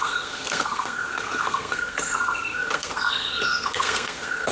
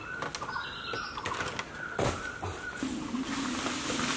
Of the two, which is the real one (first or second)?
second